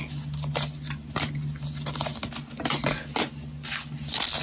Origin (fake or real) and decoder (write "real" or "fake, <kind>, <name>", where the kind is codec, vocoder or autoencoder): real